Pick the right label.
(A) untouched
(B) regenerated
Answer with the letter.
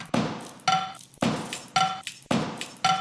A